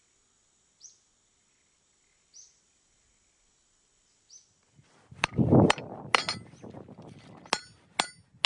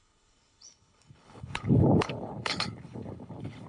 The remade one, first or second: second